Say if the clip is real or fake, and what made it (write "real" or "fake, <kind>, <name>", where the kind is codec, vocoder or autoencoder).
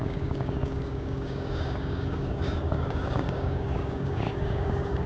fake, codec, DAC